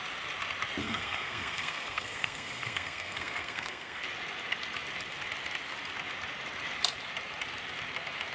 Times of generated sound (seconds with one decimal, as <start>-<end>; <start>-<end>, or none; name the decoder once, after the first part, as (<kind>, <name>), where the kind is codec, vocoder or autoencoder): 0.8-4.0 (codec, SNAC)